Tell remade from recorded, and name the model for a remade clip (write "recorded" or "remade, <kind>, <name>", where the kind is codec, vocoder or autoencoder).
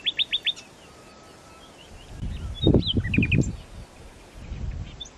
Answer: recorded